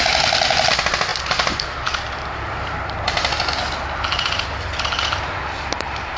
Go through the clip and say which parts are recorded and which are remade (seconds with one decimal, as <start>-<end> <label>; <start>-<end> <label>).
0.0-6.2 recorded